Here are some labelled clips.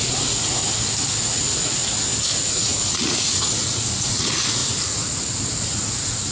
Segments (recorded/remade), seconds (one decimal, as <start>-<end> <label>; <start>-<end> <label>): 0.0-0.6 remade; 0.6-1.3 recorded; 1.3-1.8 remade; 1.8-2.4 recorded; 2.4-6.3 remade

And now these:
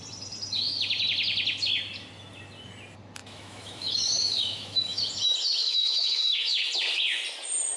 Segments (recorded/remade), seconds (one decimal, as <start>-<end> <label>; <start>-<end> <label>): 0.0-3.2 recorded; 3.2-5.0 remade; 5.0-5.6 recorded; 5.6-6.5 remade; 6.5-7.8 recorded

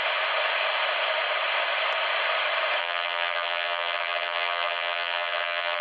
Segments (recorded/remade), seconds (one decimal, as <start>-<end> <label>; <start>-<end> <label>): 0.0-2.8 recorded; 2.8-5.8 remade